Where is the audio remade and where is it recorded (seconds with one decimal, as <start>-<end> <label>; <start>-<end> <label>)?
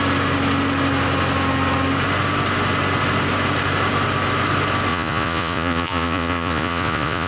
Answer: 0.0-4.9 recorded; 4.9-7.3 remade